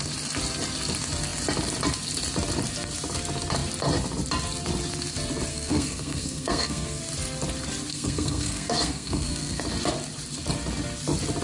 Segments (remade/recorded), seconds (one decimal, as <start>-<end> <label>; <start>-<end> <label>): 0.0-5.5 recorded; 5.5-7.0 remade; 7.0-7.9 recorded; 7.9-9.6 remade; 9.6-11.4 recorded

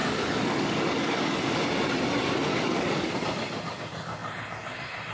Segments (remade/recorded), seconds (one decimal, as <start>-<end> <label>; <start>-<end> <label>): 0.0-1.6 remade; 1.6-2.5 recorded; 2.5-3.1 remade; 3.1-5.1 recorded

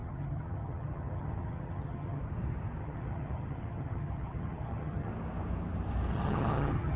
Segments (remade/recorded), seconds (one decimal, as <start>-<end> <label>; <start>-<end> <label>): 0.0-2.2 remade; 2.2-2.8 recorded; 2.8-5.1 remade; 5.1-6.1 recorded; 6.1-7.0 remade

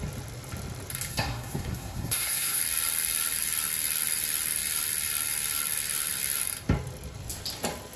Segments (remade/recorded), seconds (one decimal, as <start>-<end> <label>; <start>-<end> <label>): 0.0-1.1 recorded; 1.1-2.6 remade; 2.6-8.0 recorded